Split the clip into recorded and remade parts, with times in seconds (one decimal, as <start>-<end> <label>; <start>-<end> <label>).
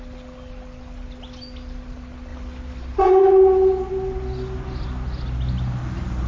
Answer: 0.0-6.3 recorded